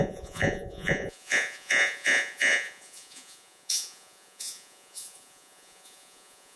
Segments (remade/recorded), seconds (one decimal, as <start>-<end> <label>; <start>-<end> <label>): 0.0-6.6 remade